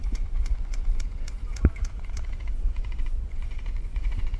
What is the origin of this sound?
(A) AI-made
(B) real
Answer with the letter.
A